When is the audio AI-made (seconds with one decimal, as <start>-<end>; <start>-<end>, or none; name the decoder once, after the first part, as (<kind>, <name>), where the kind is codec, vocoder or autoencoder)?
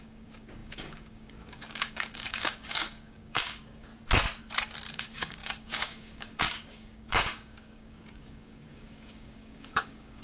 0.0-3.9 (codec, DAC); 4.9-10.2